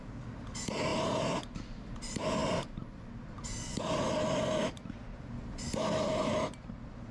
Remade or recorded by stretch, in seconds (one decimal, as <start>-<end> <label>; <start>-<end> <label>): 0.0-7.1 recorded